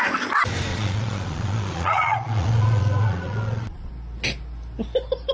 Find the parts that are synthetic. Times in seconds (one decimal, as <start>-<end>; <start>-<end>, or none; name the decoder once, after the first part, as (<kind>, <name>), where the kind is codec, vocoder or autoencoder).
0.7-3.9 (vocoder, Vocos)